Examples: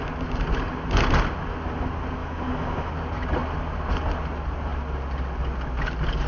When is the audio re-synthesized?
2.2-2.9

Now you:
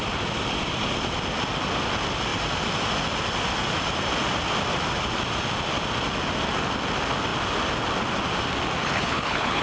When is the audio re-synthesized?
8.8-9.6

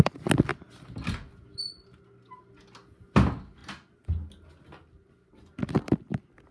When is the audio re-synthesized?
none

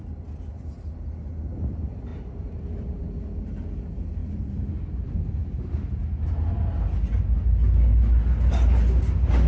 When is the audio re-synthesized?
2.1-3.0

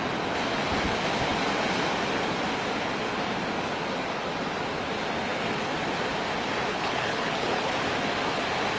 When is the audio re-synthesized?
6.7-7.7

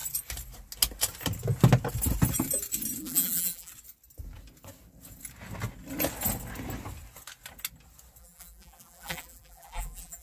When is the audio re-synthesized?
3.0-3.7; 8.2-10.2